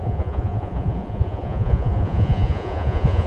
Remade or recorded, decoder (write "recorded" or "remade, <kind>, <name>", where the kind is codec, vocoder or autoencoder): remade, vocoder, Vocos